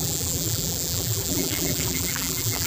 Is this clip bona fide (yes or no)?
no